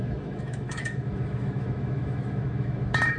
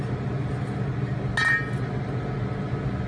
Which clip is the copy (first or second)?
first